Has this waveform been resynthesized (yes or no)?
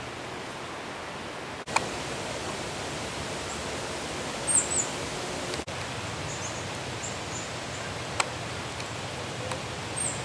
no